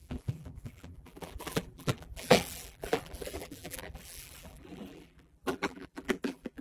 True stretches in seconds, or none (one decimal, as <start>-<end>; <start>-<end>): none